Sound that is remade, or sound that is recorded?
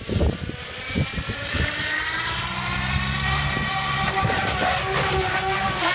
remade